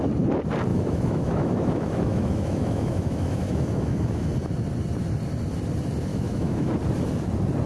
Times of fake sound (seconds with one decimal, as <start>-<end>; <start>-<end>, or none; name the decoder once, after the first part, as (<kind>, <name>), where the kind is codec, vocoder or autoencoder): 0.7-4.3 (autoencoder, DAC-VAE); 6.1-6.7